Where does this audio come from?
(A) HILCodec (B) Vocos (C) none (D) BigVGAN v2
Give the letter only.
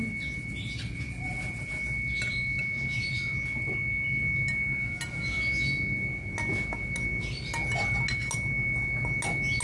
C